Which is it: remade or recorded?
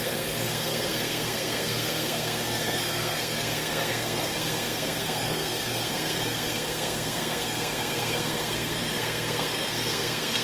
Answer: remade